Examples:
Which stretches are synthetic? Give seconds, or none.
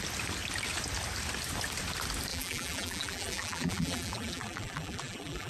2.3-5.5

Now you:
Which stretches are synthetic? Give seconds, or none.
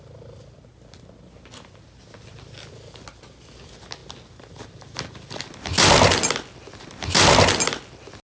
none